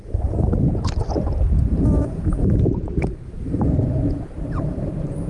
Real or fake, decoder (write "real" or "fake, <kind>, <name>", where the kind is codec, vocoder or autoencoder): fake, vocoder, BigVGAN v2